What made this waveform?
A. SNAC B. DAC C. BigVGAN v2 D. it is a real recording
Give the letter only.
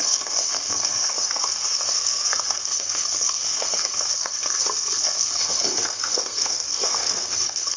A